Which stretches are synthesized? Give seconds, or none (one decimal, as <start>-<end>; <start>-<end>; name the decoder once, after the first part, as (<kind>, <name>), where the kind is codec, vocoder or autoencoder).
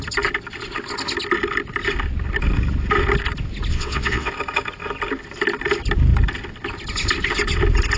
3.7-4.3 (vocoder, WaveNeXt)